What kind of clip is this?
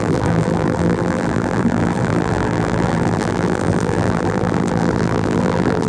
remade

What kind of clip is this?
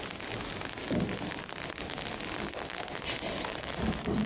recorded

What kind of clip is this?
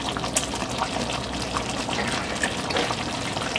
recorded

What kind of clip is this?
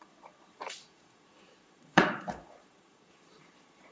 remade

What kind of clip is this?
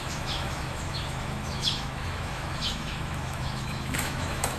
remade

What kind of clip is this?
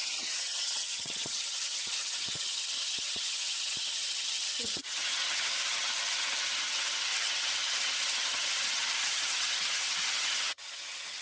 remade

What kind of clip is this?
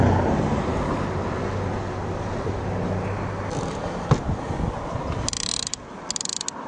recorded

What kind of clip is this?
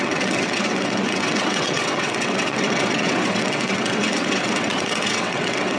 remade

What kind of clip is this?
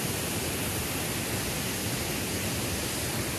recorded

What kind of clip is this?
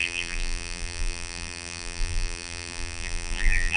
remade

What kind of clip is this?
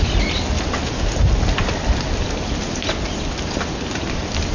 recorded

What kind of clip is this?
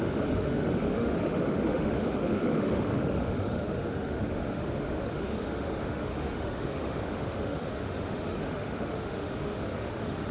remade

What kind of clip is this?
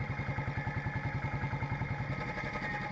recorded